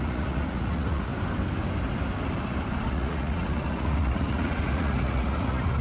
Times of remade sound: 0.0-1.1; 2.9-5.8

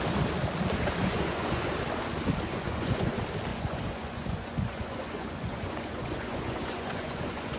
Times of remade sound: 1.0-1.7; 2.5-3.1; 3.5-7.6

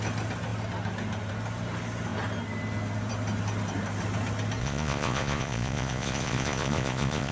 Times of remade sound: 4.6-7.3

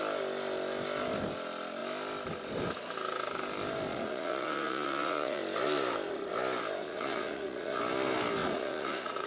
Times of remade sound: 3.9-5.4; 6.8-7.8; 8.4-9.3